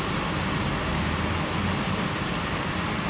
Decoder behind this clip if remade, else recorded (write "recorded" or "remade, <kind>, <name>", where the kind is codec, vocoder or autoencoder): recorded